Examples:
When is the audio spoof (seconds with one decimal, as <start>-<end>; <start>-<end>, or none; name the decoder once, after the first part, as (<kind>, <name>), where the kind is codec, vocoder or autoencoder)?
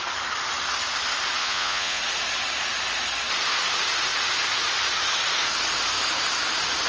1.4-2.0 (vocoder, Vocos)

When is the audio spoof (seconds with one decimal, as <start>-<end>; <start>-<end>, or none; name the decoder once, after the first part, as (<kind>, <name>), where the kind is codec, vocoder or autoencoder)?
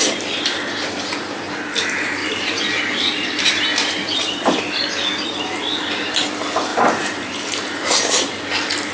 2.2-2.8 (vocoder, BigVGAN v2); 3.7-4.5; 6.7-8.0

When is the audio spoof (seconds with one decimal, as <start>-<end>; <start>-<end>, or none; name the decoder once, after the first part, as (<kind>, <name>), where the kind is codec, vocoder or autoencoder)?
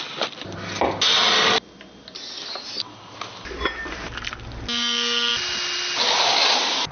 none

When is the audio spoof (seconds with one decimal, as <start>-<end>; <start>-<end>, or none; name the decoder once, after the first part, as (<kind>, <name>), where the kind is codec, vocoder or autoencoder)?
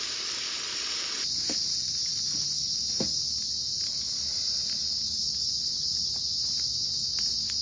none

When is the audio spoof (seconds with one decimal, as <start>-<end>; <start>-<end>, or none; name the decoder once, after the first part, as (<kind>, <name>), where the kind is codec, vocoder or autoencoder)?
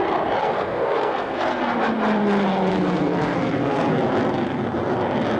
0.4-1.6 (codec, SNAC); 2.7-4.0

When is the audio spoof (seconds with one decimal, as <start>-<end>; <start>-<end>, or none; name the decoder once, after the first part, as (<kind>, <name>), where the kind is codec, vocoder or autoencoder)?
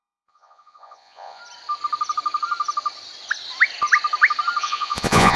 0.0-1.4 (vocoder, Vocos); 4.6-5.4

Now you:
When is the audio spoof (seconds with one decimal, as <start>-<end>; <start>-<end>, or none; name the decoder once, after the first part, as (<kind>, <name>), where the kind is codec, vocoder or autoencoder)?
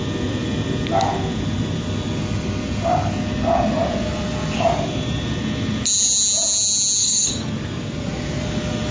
7.0-7.5 (codec, DAC)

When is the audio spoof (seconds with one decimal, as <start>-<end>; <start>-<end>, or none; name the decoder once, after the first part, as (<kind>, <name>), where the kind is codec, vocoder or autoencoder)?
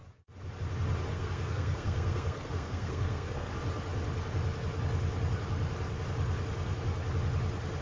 1.1-3.5 (codec, SNAC)